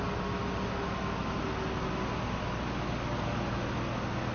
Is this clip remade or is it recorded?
recorded